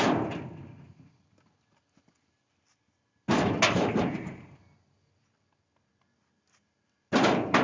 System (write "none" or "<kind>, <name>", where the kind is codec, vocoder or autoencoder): none